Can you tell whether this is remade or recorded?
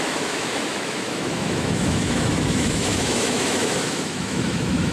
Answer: remade